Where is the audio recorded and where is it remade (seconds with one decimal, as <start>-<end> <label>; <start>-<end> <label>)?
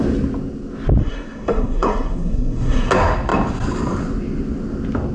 0.0-1.0 recorded; 1.0-2.9 remade; 2.9-5.1 recorded